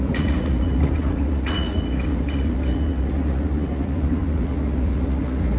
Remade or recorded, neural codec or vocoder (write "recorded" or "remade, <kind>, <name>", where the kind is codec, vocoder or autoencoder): remade, vocoder, Vocos